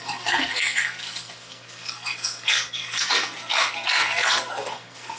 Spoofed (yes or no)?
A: yes